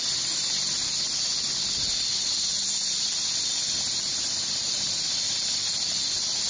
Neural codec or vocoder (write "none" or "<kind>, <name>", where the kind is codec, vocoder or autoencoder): none